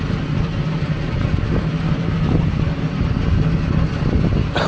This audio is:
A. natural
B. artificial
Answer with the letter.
A